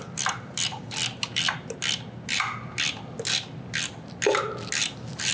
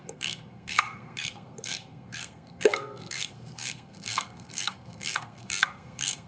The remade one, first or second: second